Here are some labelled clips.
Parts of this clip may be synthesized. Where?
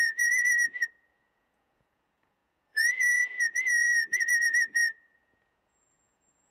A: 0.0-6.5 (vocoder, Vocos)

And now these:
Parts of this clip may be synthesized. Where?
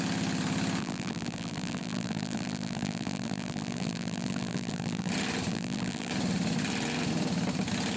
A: 0.8-5.1 (vocoder, BigVGAN v2); 5.5-6.1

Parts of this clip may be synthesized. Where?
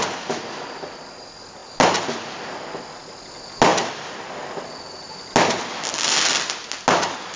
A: none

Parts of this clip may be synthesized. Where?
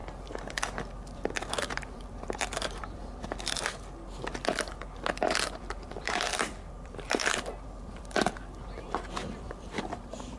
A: 1.1-3.0 (vocoder, BigVGAN v2); 5.1-10.4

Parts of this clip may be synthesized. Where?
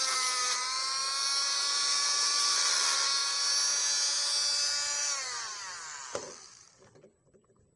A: 0.0-3.2 (vocoder, BigVGAN v2); 5.0-7.8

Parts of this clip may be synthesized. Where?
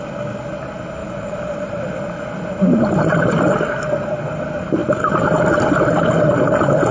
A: 1.0-1.9 (vocoder, BigVGAN v2)